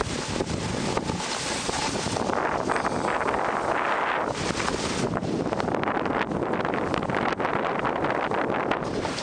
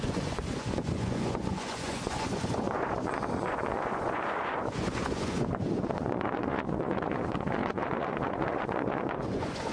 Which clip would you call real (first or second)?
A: first